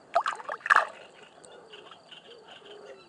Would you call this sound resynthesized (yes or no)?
no